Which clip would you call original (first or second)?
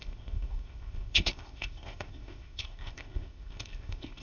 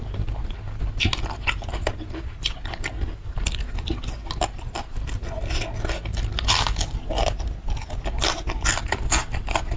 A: second